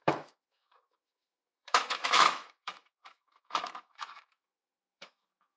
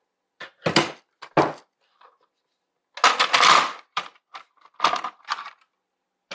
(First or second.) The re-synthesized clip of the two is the first